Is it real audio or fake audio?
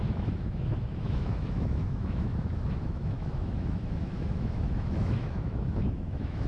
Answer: fake